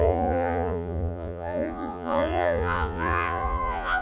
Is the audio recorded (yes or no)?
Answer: no